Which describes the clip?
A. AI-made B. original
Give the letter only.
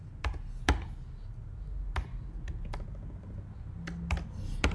B